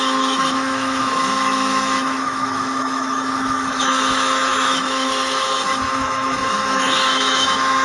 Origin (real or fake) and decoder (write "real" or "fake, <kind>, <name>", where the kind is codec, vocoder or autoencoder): fake, autoencoder, DAC-VAE